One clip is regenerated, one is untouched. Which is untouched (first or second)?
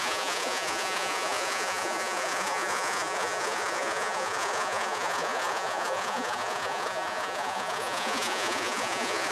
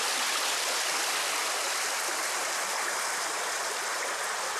second